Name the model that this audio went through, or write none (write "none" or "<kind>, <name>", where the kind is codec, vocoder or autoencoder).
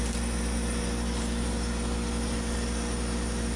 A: none